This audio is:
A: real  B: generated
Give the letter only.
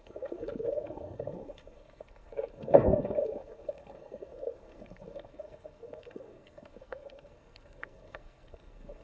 B